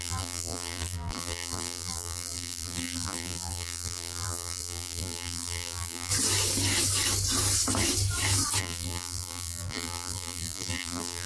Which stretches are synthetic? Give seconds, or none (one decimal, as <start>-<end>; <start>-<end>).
0.0-6.1; 8.6-11.3